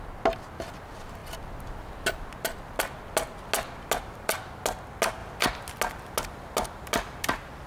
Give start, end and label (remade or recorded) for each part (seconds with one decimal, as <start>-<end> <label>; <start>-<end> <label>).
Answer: 0.0-7.7 recorded